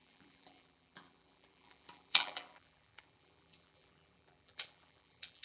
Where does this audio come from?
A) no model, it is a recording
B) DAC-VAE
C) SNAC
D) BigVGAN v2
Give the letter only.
D